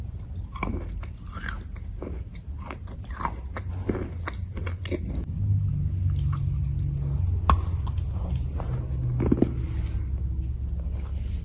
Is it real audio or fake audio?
real